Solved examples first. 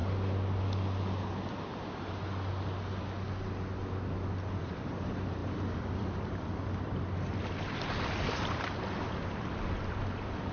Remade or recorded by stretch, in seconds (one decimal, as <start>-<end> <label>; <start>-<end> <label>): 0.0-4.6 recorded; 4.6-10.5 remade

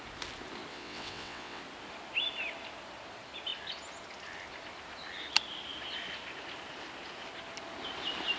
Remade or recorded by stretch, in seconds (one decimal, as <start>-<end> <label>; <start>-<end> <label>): 0.0-0.7 recorded; 0.7-1.6 remade; 1.6-8.4 recorded

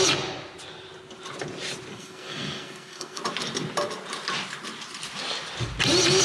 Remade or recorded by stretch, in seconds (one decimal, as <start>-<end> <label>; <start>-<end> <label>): 0.0-1.9 recorded; 1.9-3.2 remade; 3.2-6.2 recorded

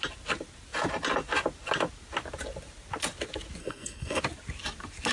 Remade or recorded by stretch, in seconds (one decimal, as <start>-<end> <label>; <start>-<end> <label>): 0.0-3.6 recorded; 3.6-4.2 remade; 4.2-5.1 recorded

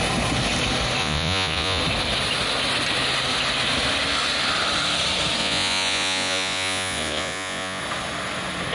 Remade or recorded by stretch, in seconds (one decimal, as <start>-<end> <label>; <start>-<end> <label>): 0.0-1.0 recorded; 1.0-1.8 remade; 1.8-5.4 recorded; 5.4-7.8 remade; 7.8-8.7 recorded